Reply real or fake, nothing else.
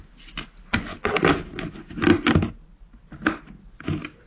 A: real